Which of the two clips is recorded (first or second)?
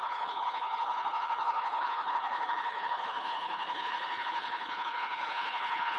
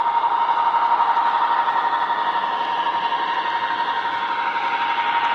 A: second